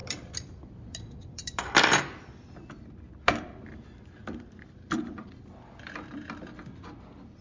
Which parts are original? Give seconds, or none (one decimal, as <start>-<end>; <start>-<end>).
1.6-4.2